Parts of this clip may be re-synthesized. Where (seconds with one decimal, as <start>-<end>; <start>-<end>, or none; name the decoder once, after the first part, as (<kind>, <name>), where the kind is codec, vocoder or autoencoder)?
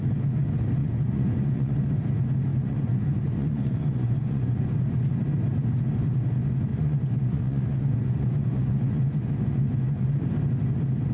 0.8-1.9 (vocoder, Vocos); 2.5-4.6; 6.7-10.1